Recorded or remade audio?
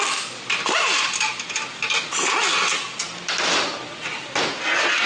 recorded